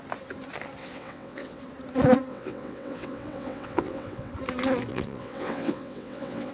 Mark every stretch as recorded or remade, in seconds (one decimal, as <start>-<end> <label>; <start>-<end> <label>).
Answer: 0.0-0.8 recorded; 0.8-1.6 remade; 1.6-2.3 recorded; 2.3-4.3 remade; 4.3-4.9 recorded; 4.9-6.5 remade